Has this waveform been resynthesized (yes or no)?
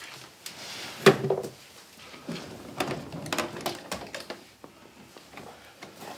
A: no